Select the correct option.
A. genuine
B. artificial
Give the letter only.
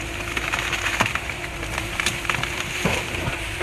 B